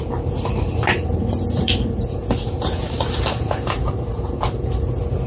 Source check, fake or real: fake